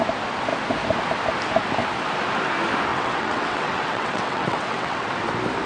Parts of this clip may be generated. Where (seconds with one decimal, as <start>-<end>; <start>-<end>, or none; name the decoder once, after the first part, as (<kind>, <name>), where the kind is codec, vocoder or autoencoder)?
2.9-5.1 (vocoder, WaveNeXt)